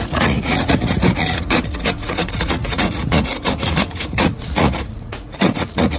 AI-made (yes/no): yes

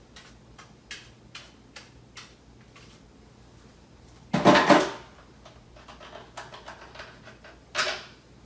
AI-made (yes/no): no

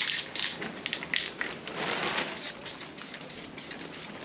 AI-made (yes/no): no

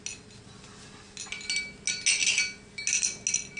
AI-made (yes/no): no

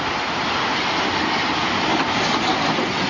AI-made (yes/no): no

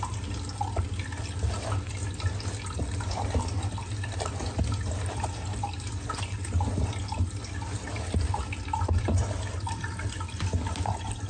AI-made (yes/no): no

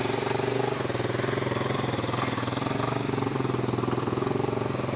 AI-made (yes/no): no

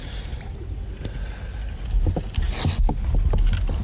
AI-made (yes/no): no